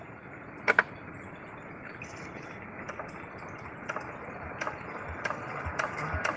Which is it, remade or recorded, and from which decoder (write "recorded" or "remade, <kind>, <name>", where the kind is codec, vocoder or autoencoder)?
recorded